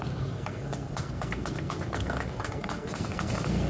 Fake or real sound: fake